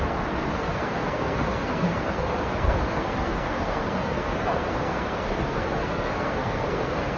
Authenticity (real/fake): fake